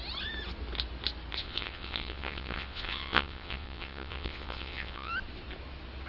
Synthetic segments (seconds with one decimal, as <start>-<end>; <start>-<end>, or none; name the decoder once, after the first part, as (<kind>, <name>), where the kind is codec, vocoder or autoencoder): 1.4-5.1 (vocoder, WaveNeXt)